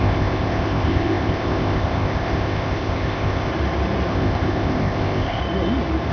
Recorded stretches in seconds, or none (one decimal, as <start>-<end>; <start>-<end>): 3.5-4.1; 5.4-6.1